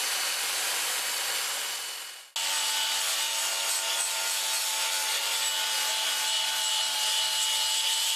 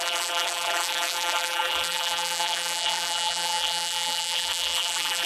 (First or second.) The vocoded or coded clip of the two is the second